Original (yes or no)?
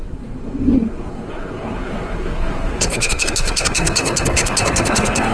no